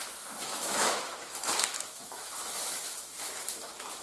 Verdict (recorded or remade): remade